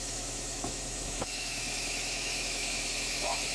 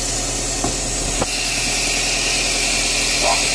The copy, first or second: first